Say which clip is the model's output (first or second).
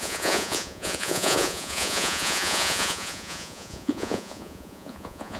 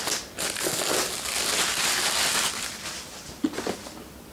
first